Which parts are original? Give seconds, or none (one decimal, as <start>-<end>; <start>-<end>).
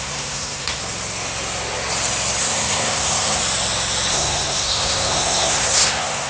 0.8-2.4; 3.4-4.1